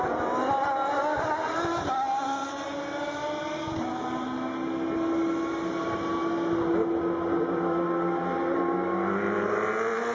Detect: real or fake real